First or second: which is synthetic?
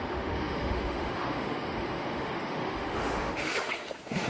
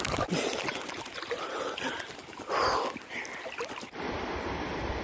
first